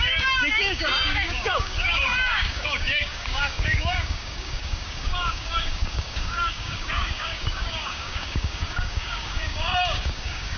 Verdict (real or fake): fake